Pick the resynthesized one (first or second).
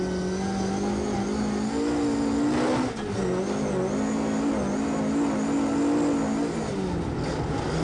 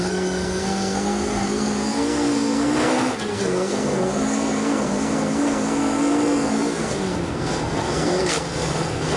second